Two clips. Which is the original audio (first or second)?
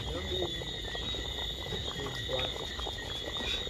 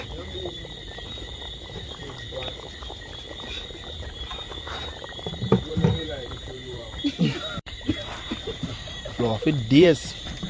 first